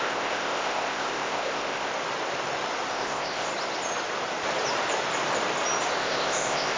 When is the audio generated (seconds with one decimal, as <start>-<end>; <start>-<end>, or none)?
0.0-1.9; 2.9-3.5; 6.0-6.8